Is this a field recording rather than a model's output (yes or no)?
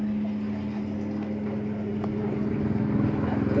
yes